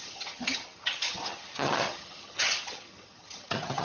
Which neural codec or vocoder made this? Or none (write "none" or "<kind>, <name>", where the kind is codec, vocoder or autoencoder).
vocoder, HiFi-GAN